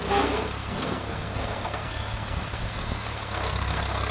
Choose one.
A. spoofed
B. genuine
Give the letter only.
A